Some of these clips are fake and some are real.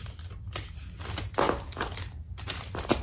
real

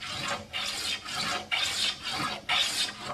real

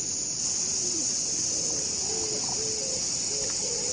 real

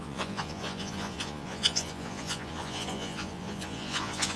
fake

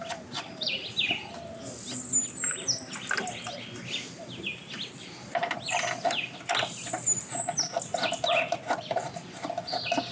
real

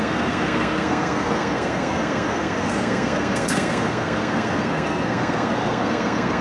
fake